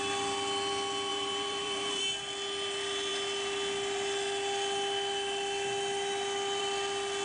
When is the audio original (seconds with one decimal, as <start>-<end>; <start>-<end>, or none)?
0.0-1.1; 2.0-7.2